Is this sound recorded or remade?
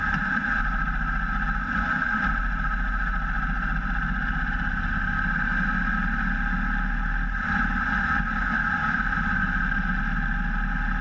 recorded